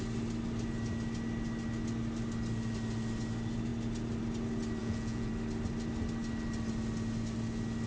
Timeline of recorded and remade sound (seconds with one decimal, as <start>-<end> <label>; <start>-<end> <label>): 0.0-4.8 recorded; 4.8-5.3 remade; 5.3-7.9 recorded